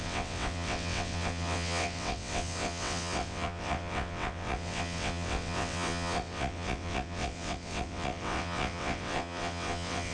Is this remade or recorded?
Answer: remade